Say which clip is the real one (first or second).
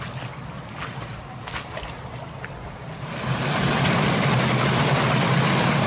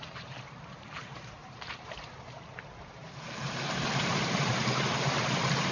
first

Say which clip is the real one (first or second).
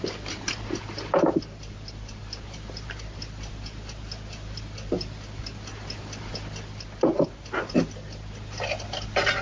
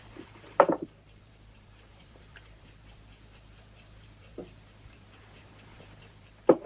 first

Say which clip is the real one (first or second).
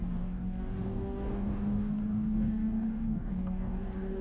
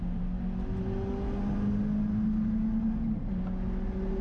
second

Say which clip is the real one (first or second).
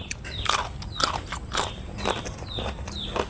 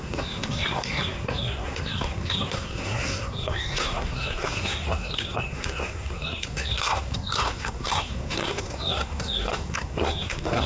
first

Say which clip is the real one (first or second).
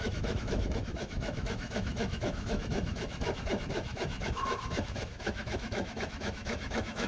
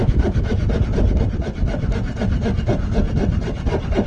second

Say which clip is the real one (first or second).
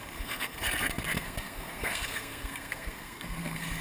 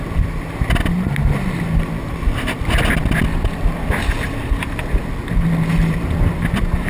second